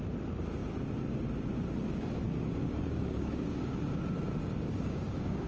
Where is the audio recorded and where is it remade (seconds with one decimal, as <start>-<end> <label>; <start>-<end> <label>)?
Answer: 0.0-2.6 recorded; 2.6-3.8 remade; 3.8-4.4 recorded; 4.4-5.5 remade